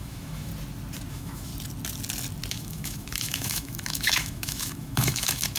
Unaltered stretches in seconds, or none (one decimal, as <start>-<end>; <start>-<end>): 0.5-1.1; 1.5-2.5